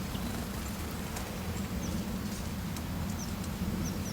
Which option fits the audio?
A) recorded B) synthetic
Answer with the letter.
A